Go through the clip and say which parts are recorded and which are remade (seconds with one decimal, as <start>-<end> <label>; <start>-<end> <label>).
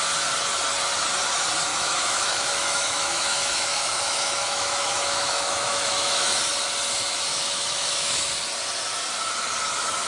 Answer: 0.0-1.7 recorded; 1.7-6.4 remade; 6.4-7.3 recorded; 7.3-8.3 remade; 8.3-10.1 recorded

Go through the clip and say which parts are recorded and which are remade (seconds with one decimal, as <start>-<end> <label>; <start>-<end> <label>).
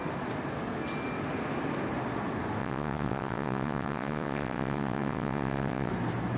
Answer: 0.0-2.6 recorded; 2.6-5.9 remade; 5.9-6.4 recorded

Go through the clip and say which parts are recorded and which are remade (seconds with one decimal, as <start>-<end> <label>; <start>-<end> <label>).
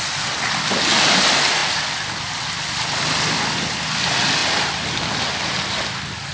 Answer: 0.0-6.3 recorded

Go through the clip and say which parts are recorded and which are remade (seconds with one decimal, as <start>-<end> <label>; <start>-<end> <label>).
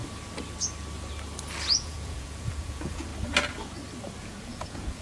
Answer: 0.0-1.7 recorded; 1.7-3.1 remade; 3.1-4.2 recorded; 4.2-5.0 remade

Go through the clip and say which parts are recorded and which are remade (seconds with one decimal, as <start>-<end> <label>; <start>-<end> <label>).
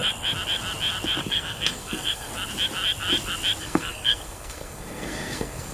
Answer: 0.0-1.2 recorded; 1.2-2.3 remade; 2.3-3.6 recorded; 3.6-5.7 remade